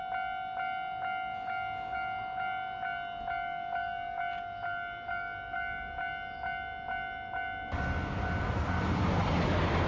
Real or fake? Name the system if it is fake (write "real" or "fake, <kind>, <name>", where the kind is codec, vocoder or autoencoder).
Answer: real